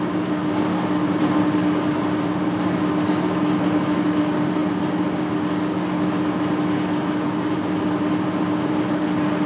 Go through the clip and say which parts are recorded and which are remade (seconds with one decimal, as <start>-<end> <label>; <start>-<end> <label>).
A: 0.0-9.5 recorded